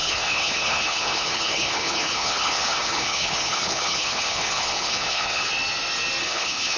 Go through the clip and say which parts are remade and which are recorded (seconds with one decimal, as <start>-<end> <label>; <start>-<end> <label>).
0.0-5.5 remade; 5.5-6.2 recorded; 6.2-6.8 remade